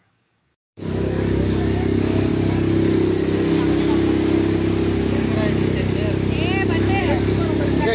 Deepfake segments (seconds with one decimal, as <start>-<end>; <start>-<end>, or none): 0.0-2.3; 7.0-7.9

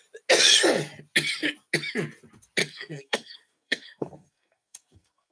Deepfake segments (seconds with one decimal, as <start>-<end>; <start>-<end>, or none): 2.6-5.3

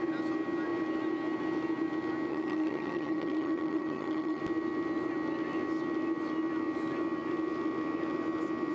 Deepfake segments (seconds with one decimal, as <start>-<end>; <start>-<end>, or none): 2.3-4.4

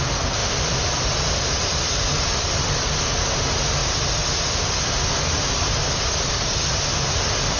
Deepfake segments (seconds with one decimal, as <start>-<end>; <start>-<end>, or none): 0.4-2.9; 3.8-6.9